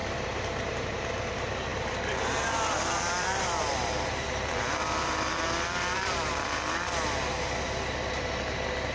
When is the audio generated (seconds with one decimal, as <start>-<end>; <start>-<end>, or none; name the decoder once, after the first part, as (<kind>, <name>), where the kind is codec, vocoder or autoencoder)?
0.0-0.5 (vocoder, BigVGAN v2); 1.7-6.7